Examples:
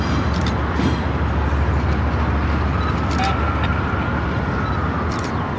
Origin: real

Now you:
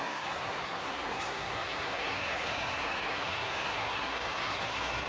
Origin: fake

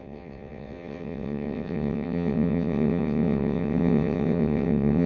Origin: fake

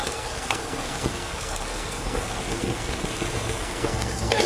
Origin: fake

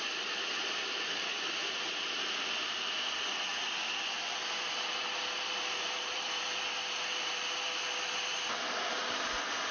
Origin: fake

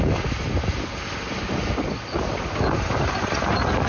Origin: real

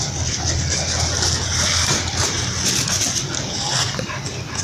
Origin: real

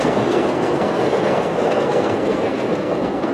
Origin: fake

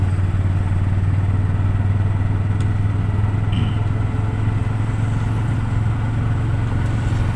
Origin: real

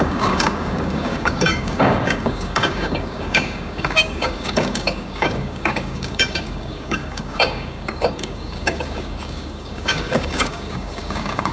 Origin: fake